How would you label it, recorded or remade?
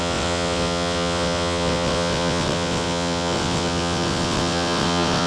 remade